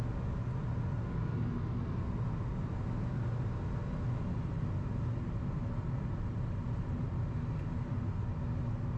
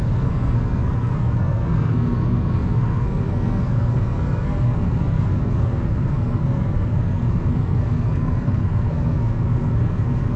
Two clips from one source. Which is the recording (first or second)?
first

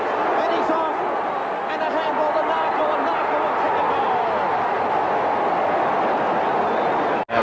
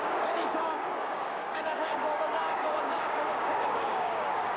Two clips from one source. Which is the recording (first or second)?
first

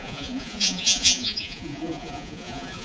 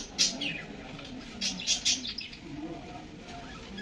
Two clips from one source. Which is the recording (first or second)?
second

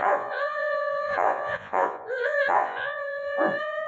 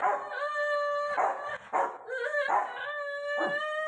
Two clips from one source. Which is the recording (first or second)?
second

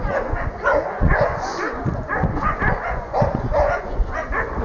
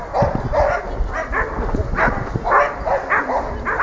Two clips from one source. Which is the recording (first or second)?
second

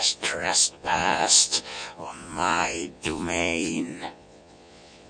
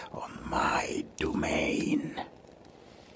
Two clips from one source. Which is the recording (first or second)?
second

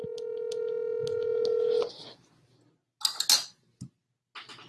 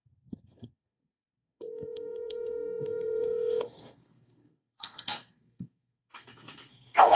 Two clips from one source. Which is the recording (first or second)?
first